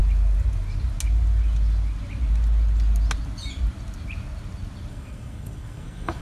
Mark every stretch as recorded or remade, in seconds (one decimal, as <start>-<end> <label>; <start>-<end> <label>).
0.0-4.9 recorded; 4.9-6.2 remade